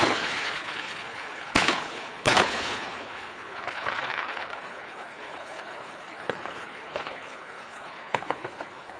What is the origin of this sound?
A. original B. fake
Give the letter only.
B